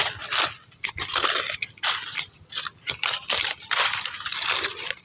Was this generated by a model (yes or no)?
no